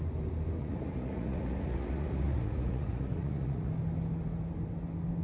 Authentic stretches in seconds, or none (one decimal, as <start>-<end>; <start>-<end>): 0.0-0.6; 3.7-5.2